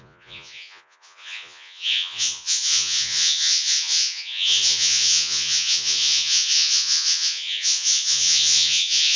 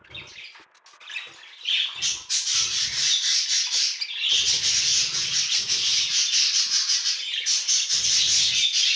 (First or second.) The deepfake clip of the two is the first